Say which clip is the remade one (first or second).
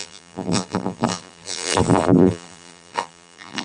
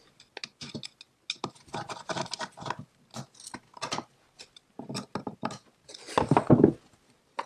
first